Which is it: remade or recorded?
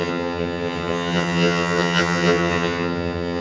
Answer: remade